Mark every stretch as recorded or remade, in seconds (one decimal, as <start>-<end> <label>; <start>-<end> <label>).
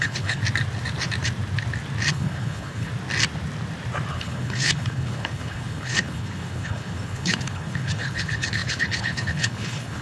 0.0-0.4 remade; 0.4-2.1 recorded; 2.1-2.9 remade; 2.9-4.1 recorded; 4.1-10.0 remade